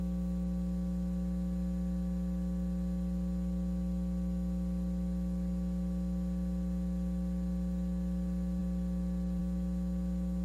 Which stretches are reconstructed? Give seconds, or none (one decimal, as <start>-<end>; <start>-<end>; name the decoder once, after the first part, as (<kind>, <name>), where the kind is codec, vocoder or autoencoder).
none